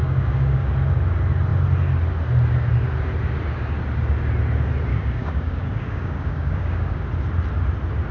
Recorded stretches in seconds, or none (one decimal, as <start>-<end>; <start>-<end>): 0.7-4.9; 7.0-8.1